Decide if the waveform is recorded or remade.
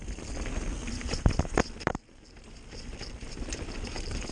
recorded